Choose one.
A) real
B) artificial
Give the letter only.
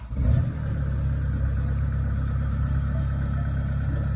A